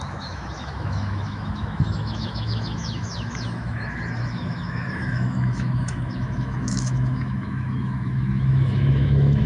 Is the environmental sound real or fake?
fake